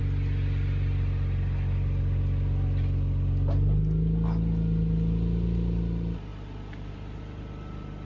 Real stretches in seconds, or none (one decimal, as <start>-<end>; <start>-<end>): 0.0-8.0